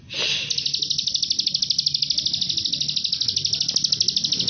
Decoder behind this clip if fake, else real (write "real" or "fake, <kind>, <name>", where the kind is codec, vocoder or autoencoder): real